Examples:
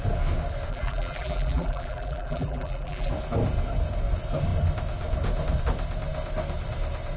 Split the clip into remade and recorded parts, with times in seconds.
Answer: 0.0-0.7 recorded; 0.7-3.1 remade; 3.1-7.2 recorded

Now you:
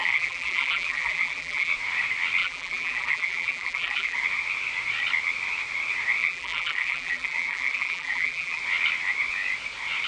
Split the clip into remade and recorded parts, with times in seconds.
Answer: 0.0-1.7 remade; 1.7-2.4 recorded; 2.4-4.2 remade; 4.2-6.2 recorded; 6.2-8.6 remade; 8.6-10.1 recorded

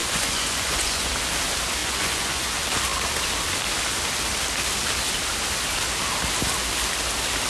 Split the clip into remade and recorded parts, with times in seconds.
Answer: 0.0-1.1 remade; 1.1-1.8 recorded; 1.8-2.5 remade; 2.5-7.5 recorded

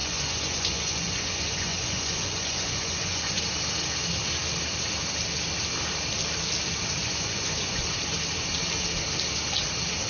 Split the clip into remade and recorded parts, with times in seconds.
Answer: 0.0-3.4 remade; 3.4-7.0 recorded; 7.0-7.8 remade; 7.8-10.1 recorded

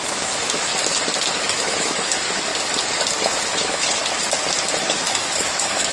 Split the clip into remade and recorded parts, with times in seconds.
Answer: 0.0-0.7 remade; 0.7-1.5 recorded; 1.5-2.5 remade; 2.5-3.2 recorded; 3.2-4.0 remade; 4.0-4.8 recorded; 4.8-5.9 remade

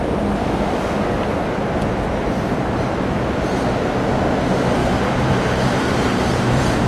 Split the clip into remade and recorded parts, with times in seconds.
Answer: 0.0-4.8 recorded; 4.8-6.9 remade